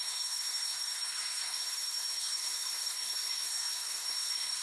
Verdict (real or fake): fake